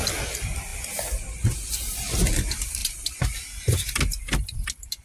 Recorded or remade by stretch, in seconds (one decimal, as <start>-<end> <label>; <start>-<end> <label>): 0.0-5.0 recorded